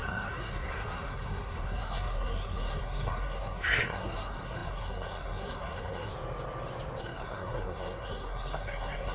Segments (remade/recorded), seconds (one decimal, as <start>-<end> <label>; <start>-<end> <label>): 0.0-6.1 remade; 6.1-7.0 recorded; 7.0-9.1 remade